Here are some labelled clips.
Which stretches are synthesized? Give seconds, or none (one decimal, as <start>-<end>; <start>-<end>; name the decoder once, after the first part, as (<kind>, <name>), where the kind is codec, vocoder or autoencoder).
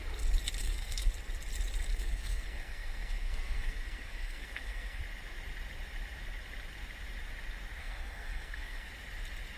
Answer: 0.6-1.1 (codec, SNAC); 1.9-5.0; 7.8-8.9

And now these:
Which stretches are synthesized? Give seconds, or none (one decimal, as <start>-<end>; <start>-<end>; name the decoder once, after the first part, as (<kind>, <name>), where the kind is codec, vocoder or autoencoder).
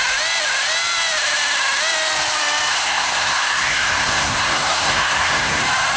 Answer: 2.7-5.6 (codec, SNAC)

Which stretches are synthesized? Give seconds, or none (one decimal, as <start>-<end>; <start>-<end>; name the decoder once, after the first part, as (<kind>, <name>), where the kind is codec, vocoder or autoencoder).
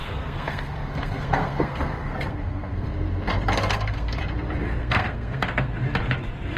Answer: 0.0-2.9 (codec, SNAC); 3.6-4.2; 4.7-5.7